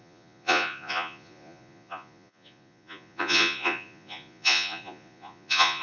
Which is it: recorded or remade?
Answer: remade